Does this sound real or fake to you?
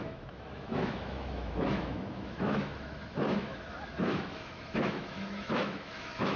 fake